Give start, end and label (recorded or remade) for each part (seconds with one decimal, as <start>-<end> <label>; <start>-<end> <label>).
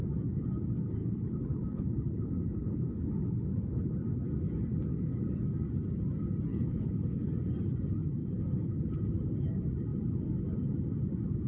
0.0-1.0 recorded; 1.0-3.9 remade; 3.9-6.5 recorded; 6.5-7.3 remade; 7.3-8.2 recorded; 8.2-8.9 remade; 8.9-11.5 recorded